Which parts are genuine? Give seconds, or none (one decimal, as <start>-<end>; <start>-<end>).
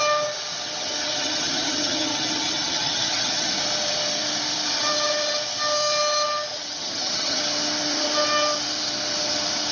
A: 0.0-0.6; 3.6-6.5; 7.4-9.7